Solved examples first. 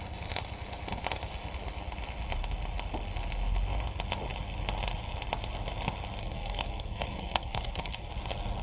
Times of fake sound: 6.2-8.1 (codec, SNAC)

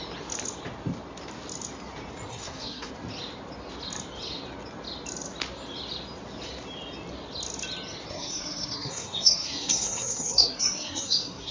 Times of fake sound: 2.3-2.9 (codec, SNAC); 8.1-11.5

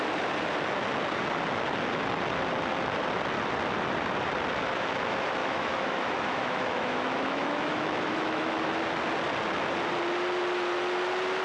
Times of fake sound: 5.4-8.7 (autoencoder, DAC-VAE)

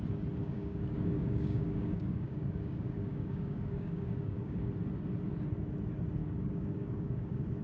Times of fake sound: 0.4-4.7 (codec, DAC); 6.2-7.6

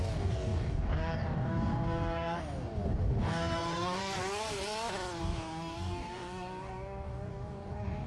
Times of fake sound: 0.0-4.0 (codec, DAC); 5.2-8.1

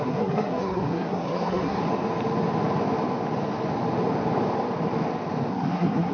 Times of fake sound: 0.0-1.8 (codec, SNAC); 5.5-6.1

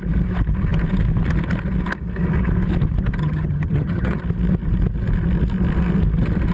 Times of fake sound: 3.2-4.2 (vocoder, HiFi-GAN)